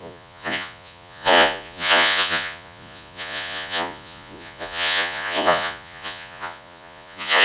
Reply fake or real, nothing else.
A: fake